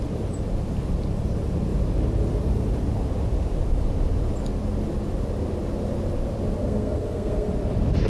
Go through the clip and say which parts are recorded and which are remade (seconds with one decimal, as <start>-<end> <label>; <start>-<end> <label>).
0.0-6.6 recorded; 6.6-7.5 remade; 7.5-8.1 recorded